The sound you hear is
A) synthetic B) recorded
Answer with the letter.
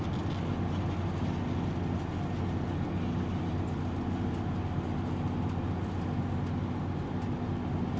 B